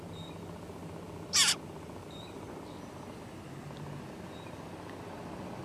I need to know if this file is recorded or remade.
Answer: recorded